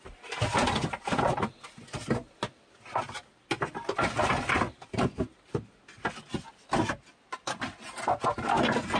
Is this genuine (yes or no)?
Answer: yes